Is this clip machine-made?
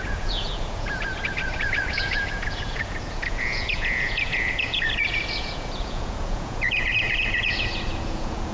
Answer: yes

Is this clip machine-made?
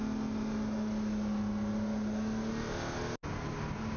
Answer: no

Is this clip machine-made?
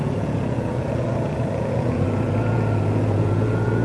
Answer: yes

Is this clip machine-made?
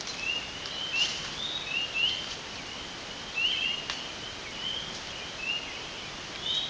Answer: no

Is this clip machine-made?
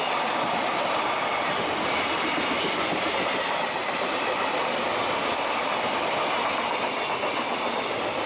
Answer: no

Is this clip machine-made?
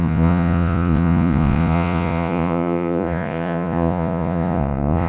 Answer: yes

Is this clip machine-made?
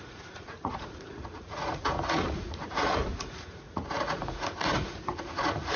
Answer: yes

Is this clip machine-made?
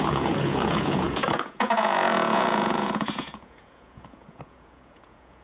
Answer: yes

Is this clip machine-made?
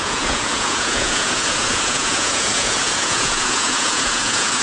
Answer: yes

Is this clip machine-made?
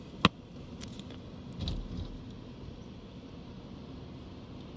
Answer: no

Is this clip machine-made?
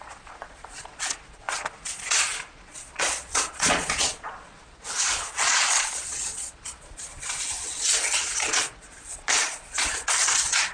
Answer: yes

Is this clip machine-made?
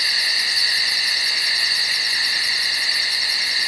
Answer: yes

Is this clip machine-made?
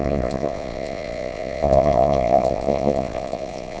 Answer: yes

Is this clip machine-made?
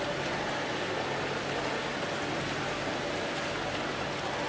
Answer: no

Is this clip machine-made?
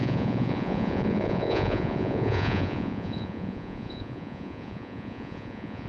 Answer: yes